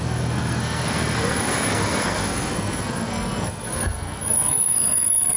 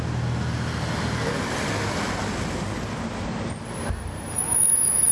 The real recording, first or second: second